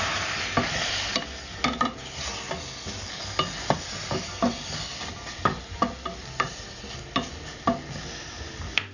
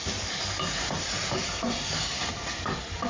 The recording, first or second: first